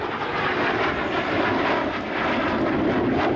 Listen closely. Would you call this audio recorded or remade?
recorded